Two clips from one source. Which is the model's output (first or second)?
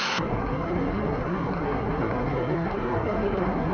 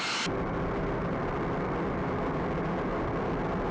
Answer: first